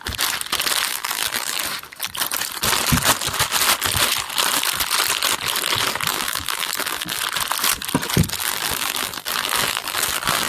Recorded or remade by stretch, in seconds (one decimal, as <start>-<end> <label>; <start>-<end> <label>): 0.0-0.9 recorded; 0.9-1.6 remade; 1.6-6.1 recorded; 6.1-7.2 remade; 7.2-8.4 recorded; 8.4-10.5 remade